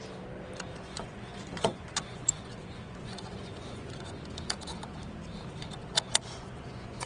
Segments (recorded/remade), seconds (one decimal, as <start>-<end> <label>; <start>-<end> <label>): 0.0-0.7 recorded; 0.7-5.0 remade; 5.0-5.8 recorded; 5.8-7.1 remade

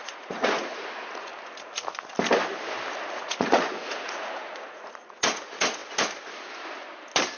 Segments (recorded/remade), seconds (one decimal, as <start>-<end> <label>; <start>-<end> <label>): 0.0-1.3 remade; 1.3-3.1 recorded; 3.1-5.8 remade; 5.8-7.4 recorded

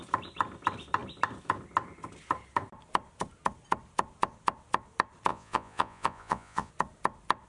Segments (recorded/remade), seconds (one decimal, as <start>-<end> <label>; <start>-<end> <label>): 0.0-5.3 recorded; 5.3-6.7 remade; 6.7-7.5 recorded

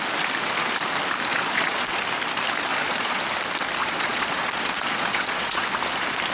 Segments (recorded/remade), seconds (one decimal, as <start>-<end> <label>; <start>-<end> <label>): 0.0-1.3 recorded; 1.3-2.0 remade; 2.0-2.7 recorded; 2.7-3.2 remade; 3.2-3.8 recorded; 3.8-5.6 remade; 5.6-6.3 recorded

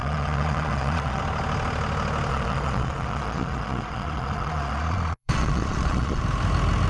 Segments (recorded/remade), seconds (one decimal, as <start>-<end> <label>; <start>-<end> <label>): 0.0-1.2 remade; 1.2-2.3 recorded; 2.3-6.2 remade; 6.2-6.9 recorded